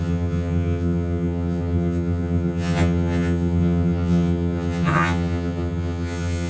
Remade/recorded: remade